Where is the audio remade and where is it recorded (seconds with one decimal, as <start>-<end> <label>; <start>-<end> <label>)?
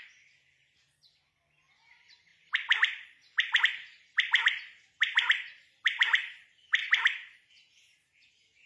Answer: 0.0-6.8 remade; 6.8-8.7 recorded